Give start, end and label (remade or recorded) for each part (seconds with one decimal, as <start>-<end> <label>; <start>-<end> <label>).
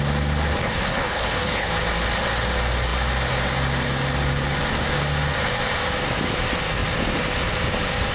0.0-0.6 recorded; 0.6-1.7 remade; 1.7-8.1 recorded